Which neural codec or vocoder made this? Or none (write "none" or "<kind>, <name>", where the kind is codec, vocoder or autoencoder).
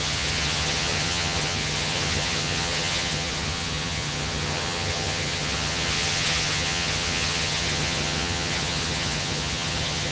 vocoder, HiFi-GAN